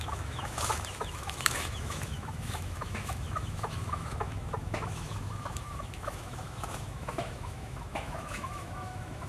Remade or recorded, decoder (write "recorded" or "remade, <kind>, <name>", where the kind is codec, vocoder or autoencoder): remade, autoencoder, DAC-VAE